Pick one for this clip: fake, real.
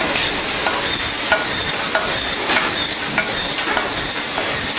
real